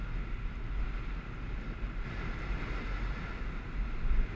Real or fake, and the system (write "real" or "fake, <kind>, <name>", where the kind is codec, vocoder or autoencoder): real